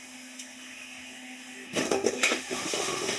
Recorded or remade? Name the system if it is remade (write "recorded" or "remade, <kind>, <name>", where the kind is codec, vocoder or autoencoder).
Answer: remade, autoencoder, DAC-VAE